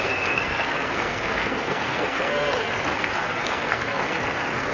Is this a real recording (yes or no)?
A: no